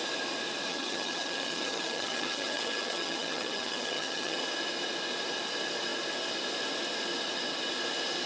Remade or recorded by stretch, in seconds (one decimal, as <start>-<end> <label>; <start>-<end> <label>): 0.0-0.7 recorded; 0.7-4.4 remade; 4.4-8.3 recorded